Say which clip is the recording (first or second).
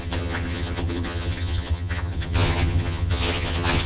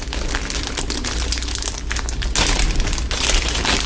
second